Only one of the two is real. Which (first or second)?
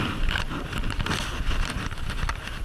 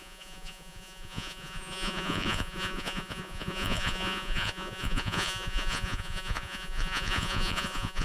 first